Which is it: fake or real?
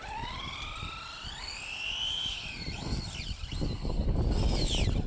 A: real